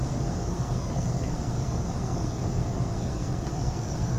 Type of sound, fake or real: fake